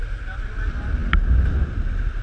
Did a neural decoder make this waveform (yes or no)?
no